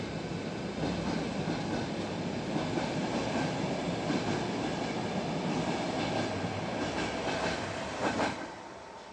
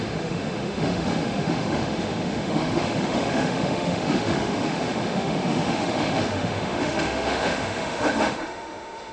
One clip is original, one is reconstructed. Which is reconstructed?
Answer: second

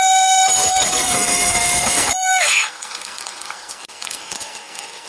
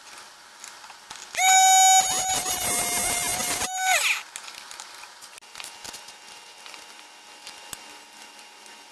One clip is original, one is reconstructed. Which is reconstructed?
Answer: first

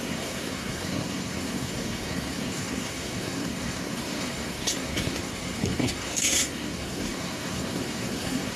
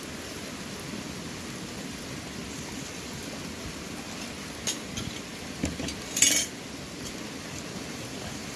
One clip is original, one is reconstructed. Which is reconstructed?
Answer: first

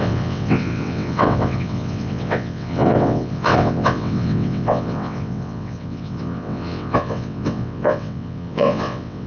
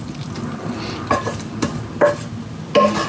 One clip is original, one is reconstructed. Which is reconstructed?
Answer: first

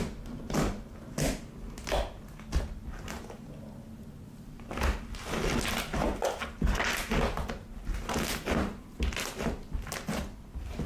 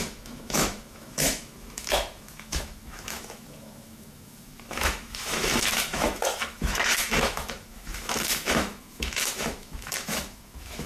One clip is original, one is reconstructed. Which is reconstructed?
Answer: second